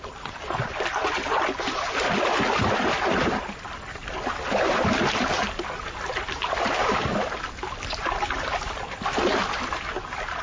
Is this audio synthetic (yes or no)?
no